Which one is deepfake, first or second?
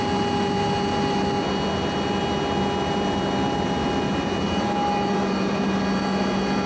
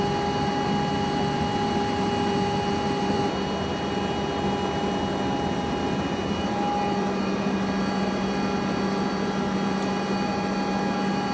second